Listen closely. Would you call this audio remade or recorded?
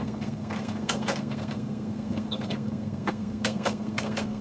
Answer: remade